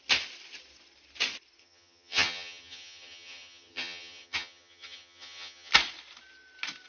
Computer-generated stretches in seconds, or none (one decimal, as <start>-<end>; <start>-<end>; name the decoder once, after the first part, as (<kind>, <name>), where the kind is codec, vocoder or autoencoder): 1.6-5.7 (vocoder, HiFi-GAN)